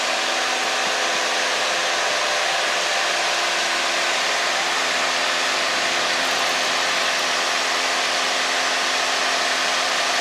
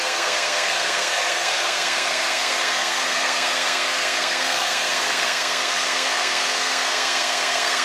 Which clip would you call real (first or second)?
first